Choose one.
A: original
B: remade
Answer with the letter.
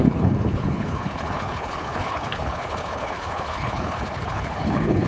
B